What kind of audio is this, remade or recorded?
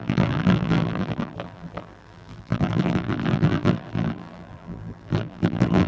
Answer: remade